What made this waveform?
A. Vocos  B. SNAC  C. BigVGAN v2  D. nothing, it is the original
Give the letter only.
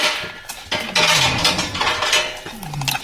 D